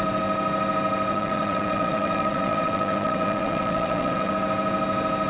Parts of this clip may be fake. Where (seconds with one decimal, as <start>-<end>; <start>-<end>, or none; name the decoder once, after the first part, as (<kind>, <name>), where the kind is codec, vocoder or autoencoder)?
1.1-4.3 (vocoder, WaveNeXt)